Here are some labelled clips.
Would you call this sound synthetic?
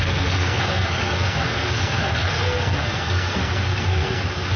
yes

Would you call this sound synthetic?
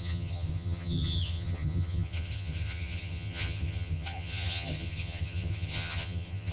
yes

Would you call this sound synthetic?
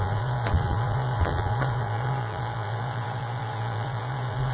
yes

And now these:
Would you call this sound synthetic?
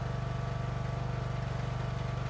no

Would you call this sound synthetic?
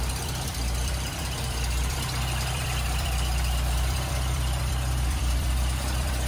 yes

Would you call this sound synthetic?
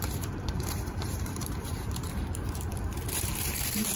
yes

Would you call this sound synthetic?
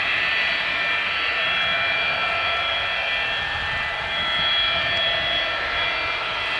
no